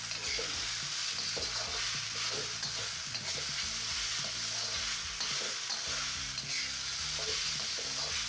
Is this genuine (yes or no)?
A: yes